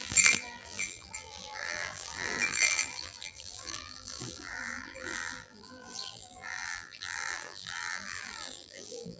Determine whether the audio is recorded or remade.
remade